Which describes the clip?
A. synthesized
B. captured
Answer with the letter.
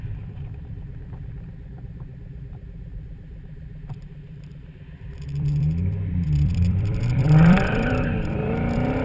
A